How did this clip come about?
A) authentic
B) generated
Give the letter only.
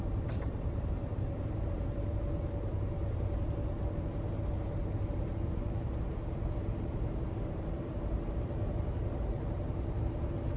B